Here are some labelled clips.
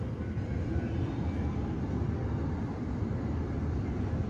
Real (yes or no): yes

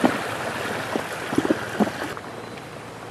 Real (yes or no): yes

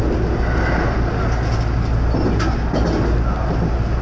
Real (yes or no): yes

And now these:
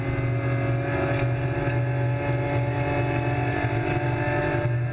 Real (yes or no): yes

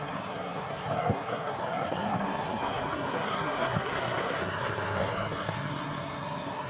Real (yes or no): no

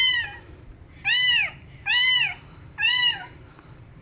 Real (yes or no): no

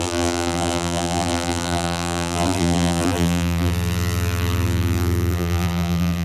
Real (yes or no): no